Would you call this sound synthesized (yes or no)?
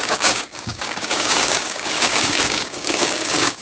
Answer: yes